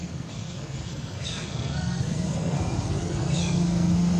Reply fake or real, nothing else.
fake